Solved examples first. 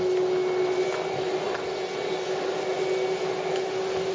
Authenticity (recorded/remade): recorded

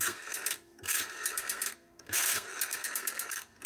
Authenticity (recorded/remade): remade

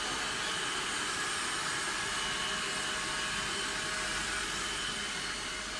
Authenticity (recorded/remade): recorded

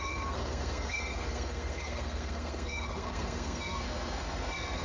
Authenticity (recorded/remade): remade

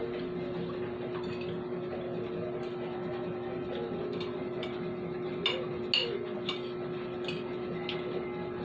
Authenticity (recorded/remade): recorded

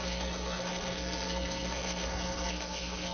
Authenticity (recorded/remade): remade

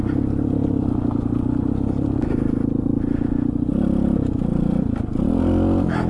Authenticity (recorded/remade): recorded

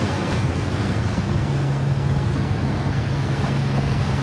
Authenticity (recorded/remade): remade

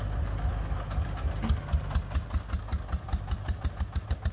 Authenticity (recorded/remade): recorded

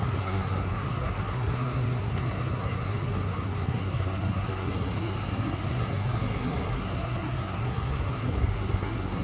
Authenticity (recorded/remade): remade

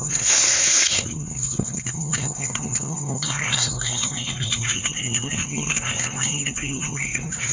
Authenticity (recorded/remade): remade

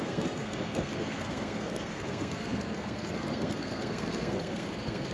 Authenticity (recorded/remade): remade